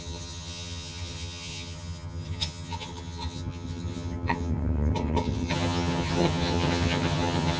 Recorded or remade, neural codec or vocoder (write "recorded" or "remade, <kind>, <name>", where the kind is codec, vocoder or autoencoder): remade, vocoder, HiFi-GAN